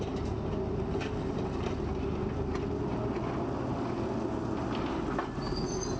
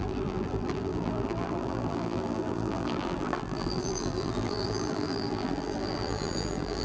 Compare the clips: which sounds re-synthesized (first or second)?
second